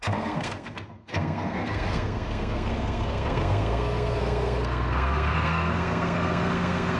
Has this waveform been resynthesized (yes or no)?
yes